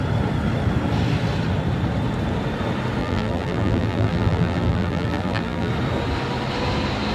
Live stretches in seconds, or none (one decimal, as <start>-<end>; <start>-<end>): 0.0-3.0; 5.7-7.1